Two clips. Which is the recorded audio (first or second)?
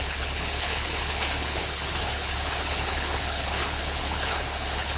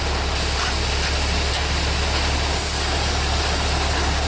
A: second